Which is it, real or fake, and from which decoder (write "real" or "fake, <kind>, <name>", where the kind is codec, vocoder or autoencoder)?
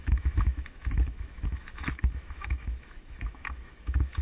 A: fake, autoencoder, DAC-VAE